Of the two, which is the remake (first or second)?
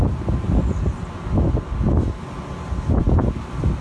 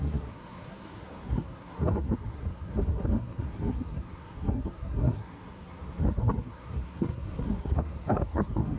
second